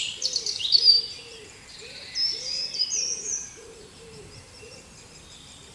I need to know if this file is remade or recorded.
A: remade